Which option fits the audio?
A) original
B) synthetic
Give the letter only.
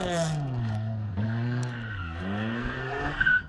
B